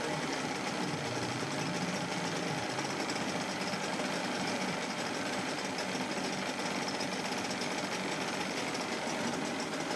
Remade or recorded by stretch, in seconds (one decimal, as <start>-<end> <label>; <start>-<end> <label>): 0.0-4.2 recorded; 4.2-5.7 remade; 5.7-10.0 recorded